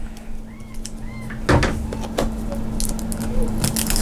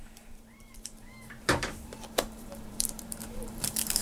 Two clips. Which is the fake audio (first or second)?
second